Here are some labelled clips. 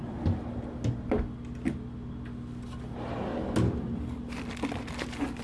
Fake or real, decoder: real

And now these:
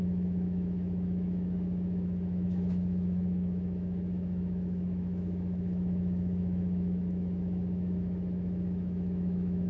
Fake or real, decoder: fake, autoencoder, DAC-VAE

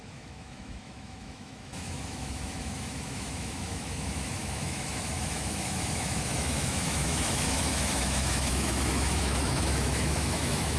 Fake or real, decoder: fake, autoencoder, DAC-VAE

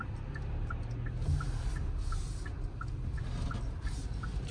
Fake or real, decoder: real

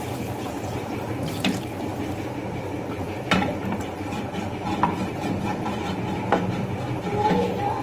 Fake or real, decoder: real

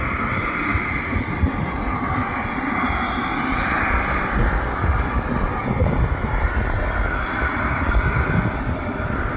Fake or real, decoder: real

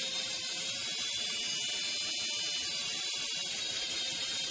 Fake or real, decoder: real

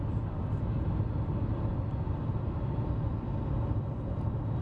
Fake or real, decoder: real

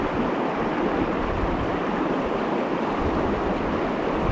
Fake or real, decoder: real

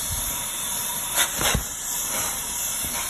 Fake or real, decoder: real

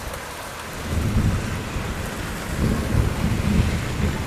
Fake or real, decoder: real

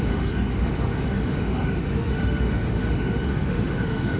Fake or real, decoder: fake, autoencoder, DAC-VAE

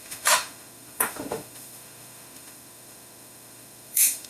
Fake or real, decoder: fake, autoencoder, DAC-VAE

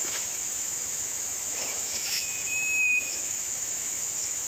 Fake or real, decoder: fake, autoencoder, DAC-VAE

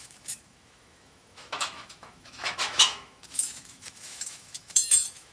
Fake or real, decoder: fake, autoencoder, DAC-VAE